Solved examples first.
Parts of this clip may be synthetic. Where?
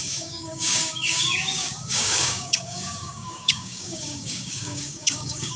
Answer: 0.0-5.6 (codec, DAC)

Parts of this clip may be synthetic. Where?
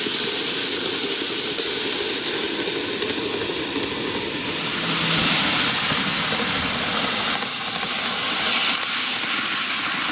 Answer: none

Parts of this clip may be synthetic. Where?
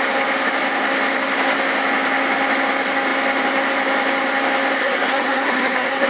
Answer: 4.8-6.1 (codec, SNAC)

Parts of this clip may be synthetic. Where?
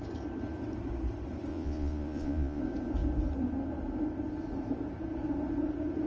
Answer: 1.5-2.6 (vocoder, Vocos)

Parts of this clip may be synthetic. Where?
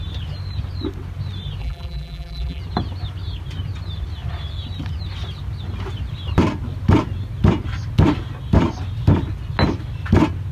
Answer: 1.6-2.6 (vocoder, BigVGAN v2)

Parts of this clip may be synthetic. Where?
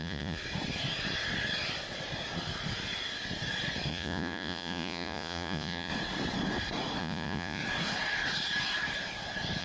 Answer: 0.0-0.4 (vocoder, Vocos); 3.9-5.9; 7.0-7.6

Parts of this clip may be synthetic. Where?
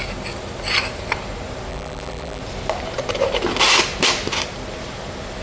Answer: 1.7-2.4 (vocoder, BigVGAN v2)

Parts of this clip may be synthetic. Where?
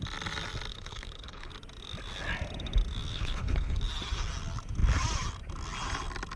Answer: 0.7-1.5 (codec, HILCodec); 3.1-3.8